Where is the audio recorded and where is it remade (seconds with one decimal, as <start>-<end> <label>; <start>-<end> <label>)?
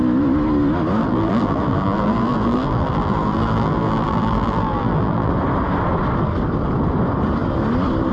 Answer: 0.0-1.0 recorded; 1.0-5.3 remade; 5.3-8.1 recorded